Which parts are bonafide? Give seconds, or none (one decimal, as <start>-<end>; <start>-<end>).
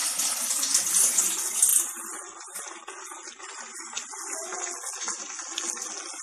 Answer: 0.0-6.2